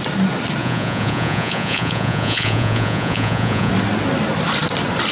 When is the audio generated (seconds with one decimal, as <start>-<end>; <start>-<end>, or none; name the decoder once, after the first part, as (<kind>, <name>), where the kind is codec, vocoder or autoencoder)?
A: 0.6-3.7 (vocoder, Vocos)